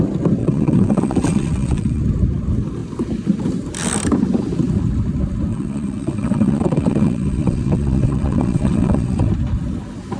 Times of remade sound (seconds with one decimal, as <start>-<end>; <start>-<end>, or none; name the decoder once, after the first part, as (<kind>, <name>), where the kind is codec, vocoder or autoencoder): 0.4-2.0 (vocoder, WaveNeXt); 5.5-9.3